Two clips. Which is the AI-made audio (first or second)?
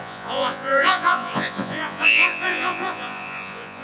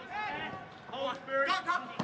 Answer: first